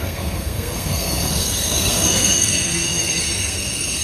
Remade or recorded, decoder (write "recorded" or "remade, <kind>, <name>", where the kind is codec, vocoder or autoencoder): remade, codec, SNAC